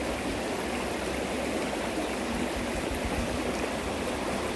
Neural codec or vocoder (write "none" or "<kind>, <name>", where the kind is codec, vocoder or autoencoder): none